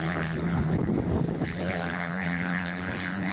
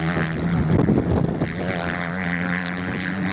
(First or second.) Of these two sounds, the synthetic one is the first